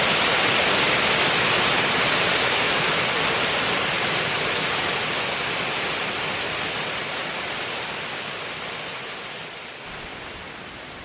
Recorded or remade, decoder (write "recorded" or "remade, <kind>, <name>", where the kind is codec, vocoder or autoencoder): recorded